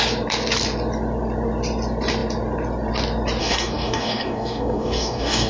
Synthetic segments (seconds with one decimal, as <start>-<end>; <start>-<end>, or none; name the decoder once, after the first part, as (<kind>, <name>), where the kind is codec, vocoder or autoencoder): 3.4-5.5 (codec, DAC)